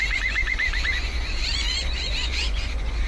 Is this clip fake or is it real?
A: fake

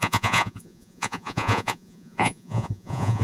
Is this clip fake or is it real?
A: fake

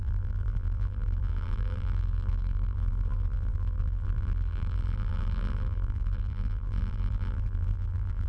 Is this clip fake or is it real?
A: fake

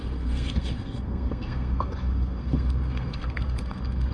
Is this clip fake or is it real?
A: fake